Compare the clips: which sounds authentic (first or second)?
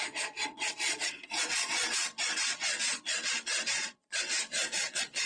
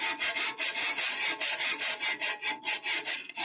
second